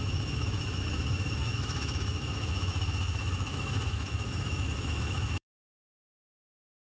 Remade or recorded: remade